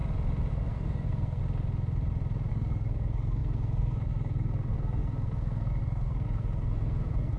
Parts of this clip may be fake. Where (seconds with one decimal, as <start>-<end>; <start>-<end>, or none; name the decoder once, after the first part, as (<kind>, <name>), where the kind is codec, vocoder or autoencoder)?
0.5-1.4 (codec, SNAC); 2.5-7.4